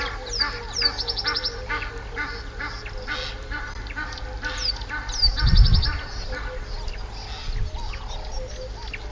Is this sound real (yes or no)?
yes